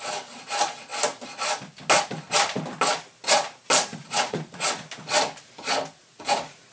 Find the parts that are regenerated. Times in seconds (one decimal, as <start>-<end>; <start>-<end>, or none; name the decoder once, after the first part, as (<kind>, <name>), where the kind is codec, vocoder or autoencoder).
3.9-4.7 (vocoder, Vocos); 6.0-6.7